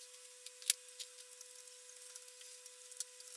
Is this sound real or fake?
real